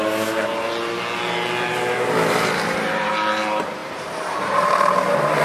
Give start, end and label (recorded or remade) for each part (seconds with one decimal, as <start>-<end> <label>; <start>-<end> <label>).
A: 0.0-1.7 recorded; 1.7-3.1 remade; 3.1-3.8 recorded; 3.8-5.4 remade